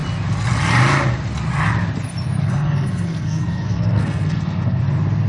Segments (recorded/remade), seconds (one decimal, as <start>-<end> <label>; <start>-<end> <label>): 0.0-2.4 recorded; 2.4-4.8 remade; 4.8-5.3 recorded